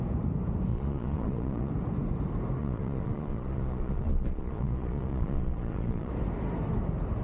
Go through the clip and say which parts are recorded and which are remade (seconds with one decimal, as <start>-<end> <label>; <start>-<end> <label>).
0.0-0.7 recorded; 0.7-1.7 remade; 1.7-2.6 recorded; 2.6-6.1 remade; 6.1-7.2 recorded